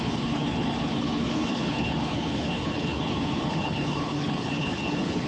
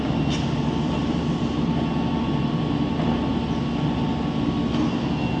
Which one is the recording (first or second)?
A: second